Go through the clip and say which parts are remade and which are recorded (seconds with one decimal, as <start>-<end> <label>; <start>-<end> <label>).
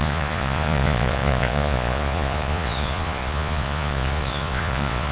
0.0-5.1 remade